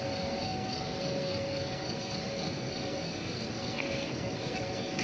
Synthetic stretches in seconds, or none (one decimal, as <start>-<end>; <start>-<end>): 0.0-5.0